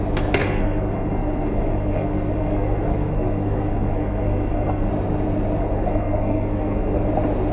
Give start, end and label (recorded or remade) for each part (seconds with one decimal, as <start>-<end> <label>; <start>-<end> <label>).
0.0-0.4 recorded; 0.4-4.9 remade; 4.9-5.6 recorded; 5.6-7.1 remade; 7.1-7.5 recorded

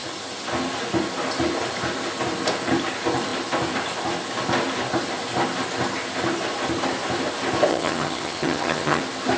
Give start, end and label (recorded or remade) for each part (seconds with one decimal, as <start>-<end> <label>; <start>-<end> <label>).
0.0-7.7 recorded; 7.7-9.0 remade; 9.0-9.4 recorded

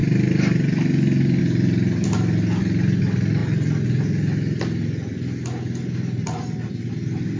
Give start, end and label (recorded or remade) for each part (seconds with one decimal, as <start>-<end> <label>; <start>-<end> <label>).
0.0-7.4 recorded